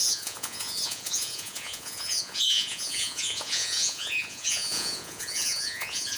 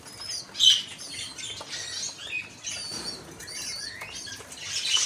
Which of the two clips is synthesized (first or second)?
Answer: first